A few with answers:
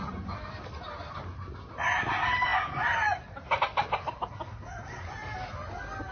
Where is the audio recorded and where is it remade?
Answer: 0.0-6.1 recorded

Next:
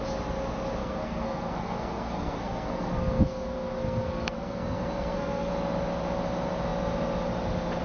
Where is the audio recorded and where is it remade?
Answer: 0.0-0.8 recorded; 0.8-5.5 remade; 5.5-7.8 recorded

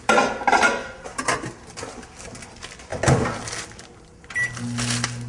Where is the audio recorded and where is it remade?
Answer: 0.0-5.3 recorded

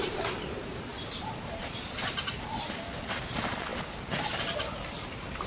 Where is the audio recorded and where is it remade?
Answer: 0.0-0.9 remade; 0.9-1.5 recorded; 1.5-5.5 remade

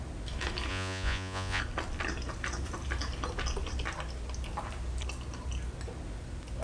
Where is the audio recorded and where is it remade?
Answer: 0.0-0.7 recorded; 0.7-1.6 remade; 1.6-6.6 recorded

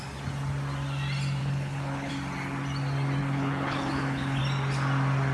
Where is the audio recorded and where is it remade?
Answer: 0.0-1.4 recorded; 1.4-2.1 remade; 2.1-3.2 recorded; 3.2-4.4 remade; 4.4-5.3 recorded